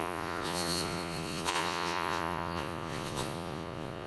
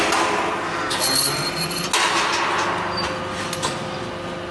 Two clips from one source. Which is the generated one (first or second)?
first